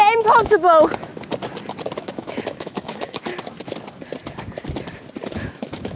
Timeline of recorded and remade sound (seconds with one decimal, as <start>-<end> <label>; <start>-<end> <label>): 0.0-1.1 remade; 1.1-2.0 recorded; 2.0-3.3 remade; 3.3-5.3 recorded; 5.3-6.0 remade